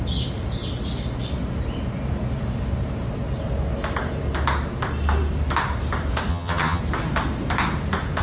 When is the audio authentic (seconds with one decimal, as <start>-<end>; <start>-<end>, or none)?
0.0-6.3; 6.8-8.2